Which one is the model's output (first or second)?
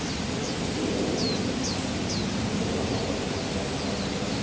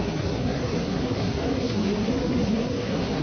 second